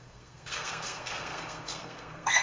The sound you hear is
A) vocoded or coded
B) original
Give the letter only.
A